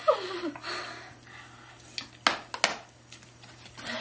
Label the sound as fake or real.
real